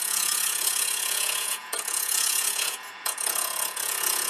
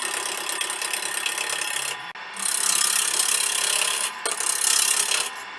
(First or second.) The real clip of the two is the second